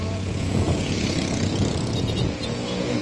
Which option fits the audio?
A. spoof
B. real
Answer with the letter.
A